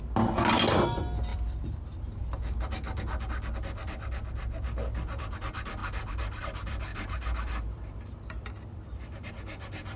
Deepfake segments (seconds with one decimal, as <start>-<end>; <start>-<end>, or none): 1.3-2.4; 6.9-9.3